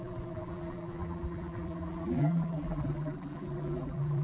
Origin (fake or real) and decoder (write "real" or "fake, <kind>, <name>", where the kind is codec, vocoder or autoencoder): fake, vocoder, BigVGAN v2